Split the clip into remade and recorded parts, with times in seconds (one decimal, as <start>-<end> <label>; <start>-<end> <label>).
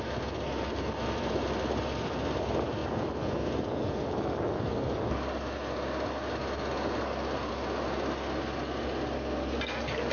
0.0-10.1 recorded